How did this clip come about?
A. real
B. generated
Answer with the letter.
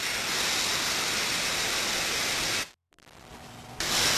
A